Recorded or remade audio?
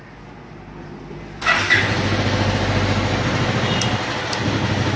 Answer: recorded